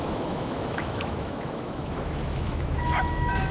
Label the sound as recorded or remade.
remade